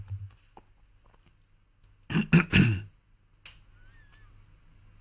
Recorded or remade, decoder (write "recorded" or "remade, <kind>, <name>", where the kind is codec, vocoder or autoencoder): recorded